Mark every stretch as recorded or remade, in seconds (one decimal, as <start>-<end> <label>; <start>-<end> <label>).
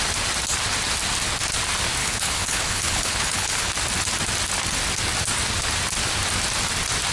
0.0-2.0 recorded; 2.0-3.7 remade; 3.7-7.1 recorded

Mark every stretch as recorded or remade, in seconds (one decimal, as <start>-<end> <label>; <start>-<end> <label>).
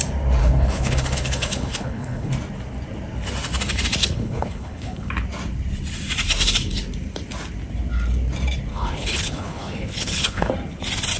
0.0-0.4 recorded; 0.4-2.3 remade; 2.3-4.0 recorded; 4.0-5.1 remade; 5.1-8.7 recorded; 8.7-10.5 remade; 10.5-11.2 recorded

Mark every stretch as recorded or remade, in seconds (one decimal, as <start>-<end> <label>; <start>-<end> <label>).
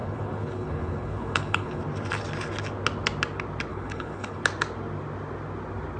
0.0-1.8 remade; 1.8-3.7 recorded; 3.7-4.4 remade; 4.4-6.0 recorded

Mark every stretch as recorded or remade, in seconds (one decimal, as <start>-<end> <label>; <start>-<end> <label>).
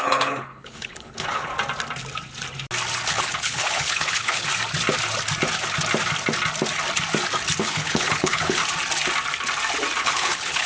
0.0-1.5 remade; 1.5-3.1 recorded; 3.1-4.5 remade; 4.5-7.6 recorded; 7.6-8.6 remade; 8.6-10.0 recorded; 10.0-10.7 remade